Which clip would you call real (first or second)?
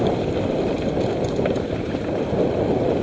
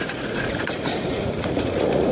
first